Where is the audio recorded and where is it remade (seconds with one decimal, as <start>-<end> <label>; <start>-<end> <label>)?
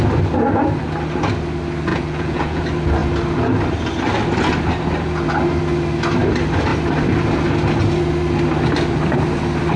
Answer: 0.0-1.9 recorded; 1.9-2.6 remade; 2.6-9.8 recorded